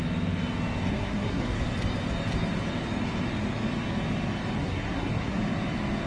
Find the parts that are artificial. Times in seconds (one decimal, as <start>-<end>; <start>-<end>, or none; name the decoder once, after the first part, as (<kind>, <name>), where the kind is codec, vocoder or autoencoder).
0.9-1.6 (codec, SNAC); 4.6-5.4